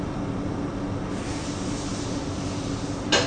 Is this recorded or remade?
recorded